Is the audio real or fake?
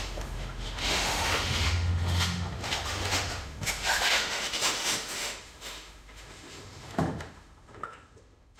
fake